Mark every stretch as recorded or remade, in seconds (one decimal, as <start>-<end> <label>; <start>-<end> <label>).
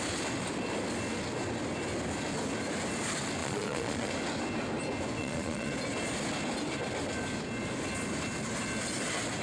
0.0-3.4 recorded; 3.4-4.1 remade; 4.1-5.2 recorded; 5.2-5.7 remade; 5.7-9.4 recorded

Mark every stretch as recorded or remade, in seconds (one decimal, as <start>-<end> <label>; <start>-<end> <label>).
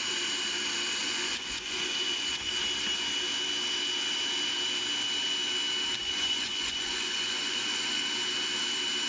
0.0-1.0 recorded; 1.0-2.5 remade; 2.5-6.0 recorded; 6.0-8.0 remade; 8.0-9.1 recorded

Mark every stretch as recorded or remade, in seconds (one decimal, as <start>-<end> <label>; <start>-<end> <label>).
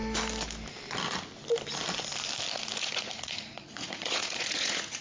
0.0-2.8 recorded; 2.8-5.0 remade